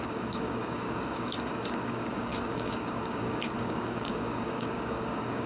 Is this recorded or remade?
remade